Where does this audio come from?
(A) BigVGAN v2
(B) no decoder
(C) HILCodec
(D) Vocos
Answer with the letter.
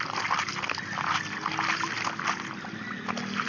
B